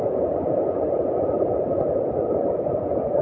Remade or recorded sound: remade